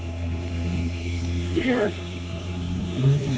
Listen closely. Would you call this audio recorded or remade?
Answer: remade